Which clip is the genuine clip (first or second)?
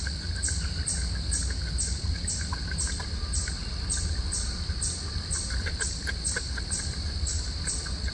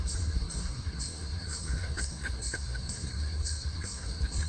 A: first